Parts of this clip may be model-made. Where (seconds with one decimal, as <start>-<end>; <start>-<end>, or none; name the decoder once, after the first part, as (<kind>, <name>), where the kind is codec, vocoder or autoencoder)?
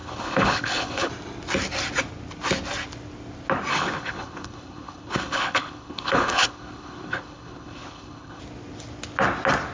0.0-1.1 (codec, HILCodec); 3.7-8.4